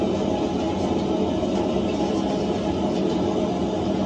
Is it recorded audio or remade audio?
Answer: recorded